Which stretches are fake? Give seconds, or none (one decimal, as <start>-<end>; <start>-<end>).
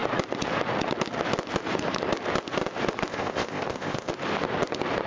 3.1-4.1